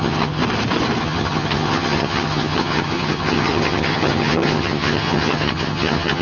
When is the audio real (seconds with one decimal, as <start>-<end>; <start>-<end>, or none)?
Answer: 0.4-1.0